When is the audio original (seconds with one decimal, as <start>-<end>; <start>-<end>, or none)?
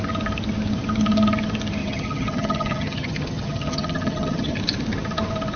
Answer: 0.0-1.8; 4.6-5.6